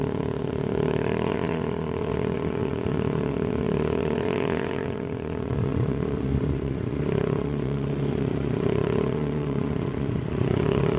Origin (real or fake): fake